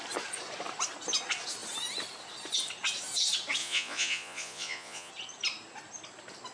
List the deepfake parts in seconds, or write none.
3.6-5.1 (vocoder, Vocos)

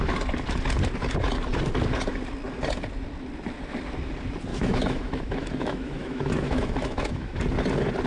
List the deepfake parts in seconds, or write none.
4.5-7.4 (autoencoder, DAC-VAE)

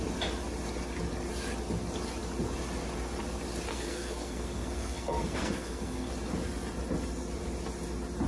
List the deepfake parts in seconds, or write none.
3.7-6.1 (codec, SNAC)

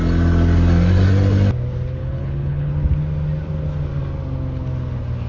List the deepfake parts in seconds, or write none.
2.0-2.7 (codec, HILCodec)

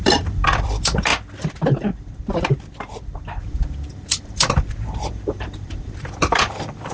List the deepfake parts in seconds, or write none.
0.0-1.1 (vocoder, BigVGAN v2); 3.4-6.9

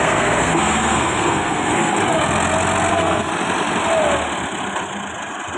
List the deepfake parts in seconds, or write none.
0.0-2.0 (codec, SNAC); 2.9-3.3